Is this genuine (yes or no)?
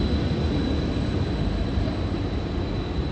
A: yes